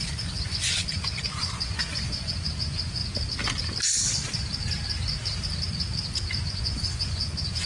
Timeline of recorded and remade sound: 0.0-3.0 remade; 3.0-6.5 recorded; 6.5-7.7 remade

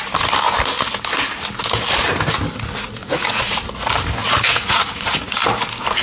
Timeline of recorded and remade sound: 0.0-3.0 recorded; 3.0-3.6 remade; 3.6-4.2 recorded; 4.2-5.3 remade; 5.3-6.0 recorded

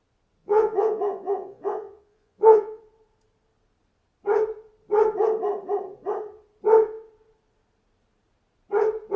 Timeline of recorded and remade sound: 0.0-0.4 recorded; 0.4-2.8 remade; 2.8-9.2 recorded

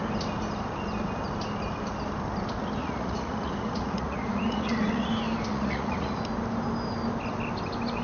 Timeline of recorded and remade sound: 0.0-2.8 recorded; 2.8-5.1 remade; 5.1-5.5 recorded; 5.5-6.2 remade; 6.2-8.0 recorded